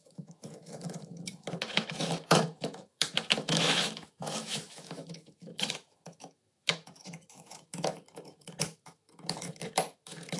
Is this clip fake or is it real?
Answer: fake